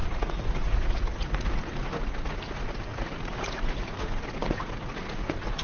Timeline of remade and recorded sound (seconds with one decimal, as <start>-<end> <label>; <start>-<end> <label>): 0.0-5.6 remade